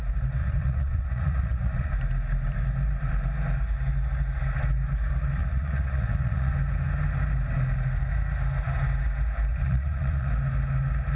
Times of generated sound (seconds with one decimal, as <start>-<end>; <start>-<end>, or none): 0.4-1.9; 5.4-6.5; 9.5-10.3